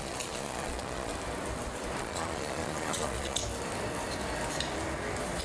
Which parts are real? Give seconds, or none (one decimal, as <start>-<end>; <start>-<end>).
1.1-2.0; 3.4-5.4